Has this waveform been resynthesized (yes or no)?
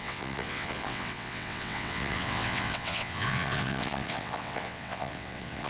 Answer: yes